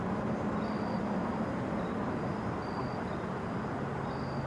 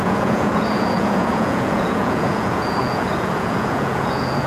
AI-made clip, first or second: second